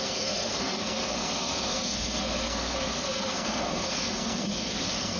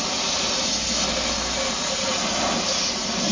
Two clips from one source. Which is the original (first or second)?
second